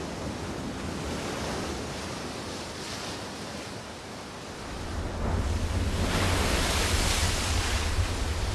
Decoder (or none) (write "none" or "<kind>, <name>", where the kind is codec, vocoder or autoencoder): none